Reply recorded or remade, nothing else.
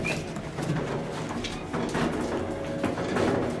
recorded